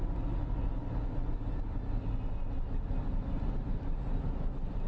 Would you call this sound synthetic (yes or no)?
no